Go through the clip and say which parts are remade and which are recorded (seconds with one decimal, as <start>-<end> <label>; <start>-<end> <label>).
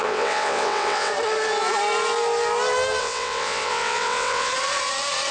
0.0-1.1 remade; 1.1-3.0 recorded; 3.0-4.5 remade; 4.5-5.3 recorded